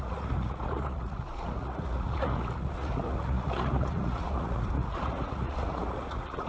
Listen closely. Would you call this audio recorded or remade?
remade